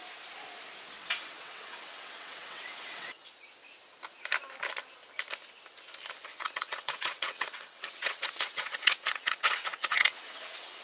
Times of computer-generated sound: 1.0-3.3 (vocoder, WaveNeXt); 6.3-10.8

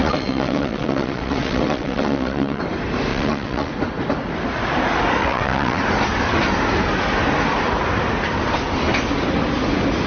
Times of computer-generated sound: 0.0-2.6 (vocoder, WaveNeXt); 3.1-3.7; 5.2-5.8

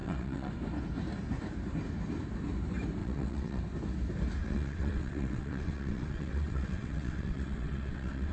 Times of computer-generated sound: 0.0-0.5 (vocoder, WaveNeXt); 3.0-3.6; 4.4-8.3